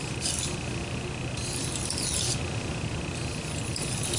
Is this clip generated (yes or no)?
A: no